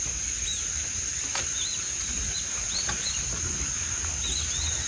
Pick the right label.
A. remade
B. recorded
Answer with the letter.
B